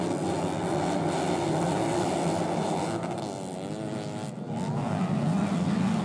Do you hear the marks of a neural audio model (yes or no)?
no